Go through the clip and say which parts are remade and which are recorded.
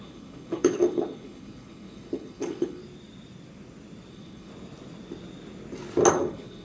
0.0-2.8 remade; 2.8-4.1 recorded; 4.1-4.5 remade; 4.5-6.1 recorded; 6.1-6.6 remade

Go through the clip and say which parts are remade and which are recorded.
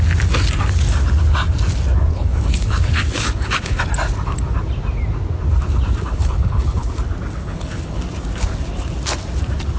0.0-2.1 recorded; 2.1-3.8 remade; 3.8-6.1 recorded; 6.1-6.9 remade; 6.9-7.4 recorded; 7.4-8.0 remade; 8.0-9.8 recorded